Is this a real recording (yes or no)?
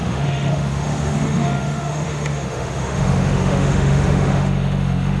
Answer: no